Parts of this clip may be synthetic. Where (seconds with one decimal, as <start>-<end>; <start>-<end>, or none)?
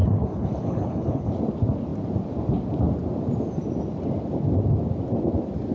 0.0-1.3